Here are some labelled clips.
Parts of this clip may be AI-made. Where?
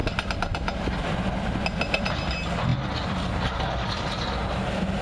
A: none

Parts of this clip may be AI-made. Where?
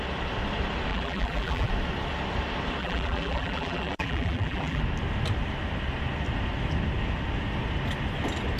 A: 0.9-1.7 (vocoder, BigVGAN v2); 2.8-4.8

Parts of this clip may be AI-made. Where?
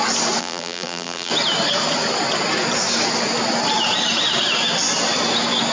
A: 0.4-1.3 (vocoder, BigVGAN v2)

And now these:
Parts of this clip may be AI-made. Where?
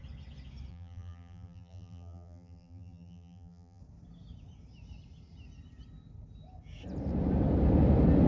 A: 0.7-3.8 (vocoder, BigVGAN v2)